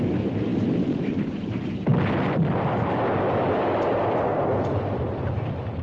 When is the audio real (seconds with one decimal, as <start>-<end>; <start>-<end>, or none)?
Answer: 0.0-5.8